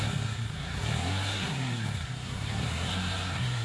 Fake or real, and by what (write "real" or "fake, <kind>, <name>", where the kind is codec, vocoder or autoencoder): fake, codec, SNAC